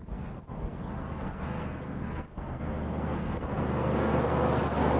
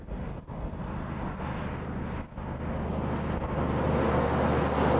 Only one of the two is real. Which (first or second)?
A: second